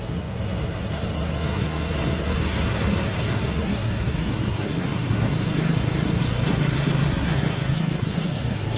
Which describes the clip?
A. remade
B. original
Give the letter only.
A